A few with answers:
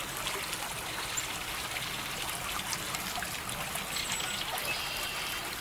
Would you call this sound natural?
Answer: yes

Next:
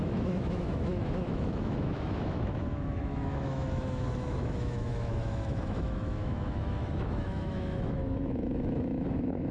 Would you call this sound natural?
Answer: no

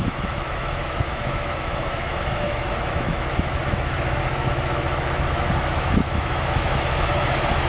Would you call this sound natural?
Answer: no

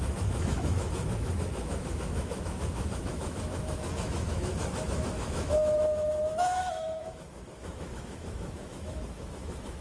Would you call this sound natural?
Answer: no